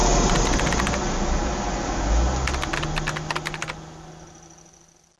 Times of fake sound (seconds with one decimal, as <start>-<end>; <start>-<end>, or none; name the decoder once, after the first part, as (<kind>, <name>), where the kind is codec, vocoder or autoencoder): none